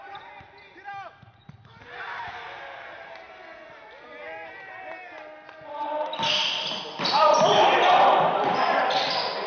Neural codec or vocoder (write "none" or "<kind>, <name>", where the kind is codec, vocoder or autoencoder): none